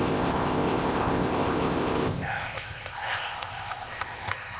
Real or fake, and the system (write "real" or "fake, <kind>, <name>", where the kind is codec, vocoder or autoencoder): fake, codec, ZipCodec